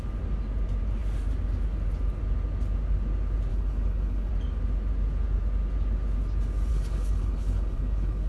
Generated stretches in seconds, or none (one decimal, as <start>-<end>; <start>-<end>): 3.5-4.3; 6.7-8.3